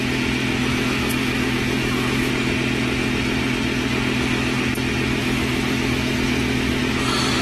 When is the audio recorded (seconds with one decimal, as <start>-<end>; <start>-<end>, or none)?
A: 0.0-0.7; 2.3-5.2; 6.8-7.4